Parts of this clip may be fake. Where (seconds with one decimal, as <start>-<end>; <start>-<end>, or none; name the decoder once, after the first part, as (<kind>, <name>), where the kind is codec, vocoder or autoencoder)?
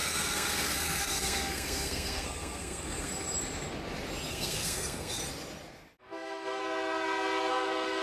0.0-3.1 (codec, SNAC); 4.3-5.2; 6.0-6.6; 7.5-8.0